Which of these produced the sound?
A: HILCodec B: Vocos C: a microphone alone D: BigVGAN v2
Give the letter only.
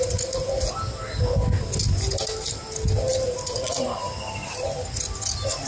C